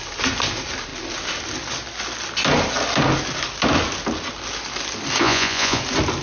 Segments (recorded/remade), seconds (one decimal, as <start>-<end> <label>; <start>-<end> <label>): 0.0-5.2 recorded; 5.2-5.8 remade; 5.8-6.2 recorded